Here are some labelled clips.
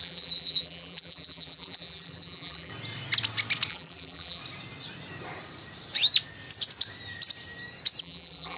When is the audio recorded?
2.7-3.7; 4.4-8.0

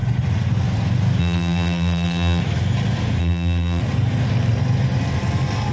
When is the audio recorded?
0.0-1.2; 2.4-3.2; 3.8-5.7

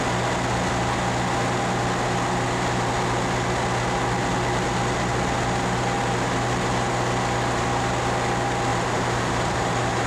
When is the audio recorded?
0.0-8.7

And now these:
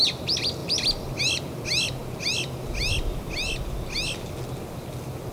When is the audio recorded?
0.0-5.3